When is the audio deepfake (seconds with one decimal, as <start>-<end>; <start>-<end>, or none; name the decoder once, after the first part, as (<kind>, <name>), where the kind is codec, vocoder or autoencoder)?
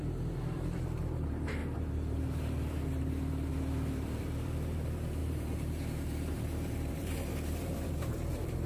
0.0-8.7 (vocoder, BigVGAN v2)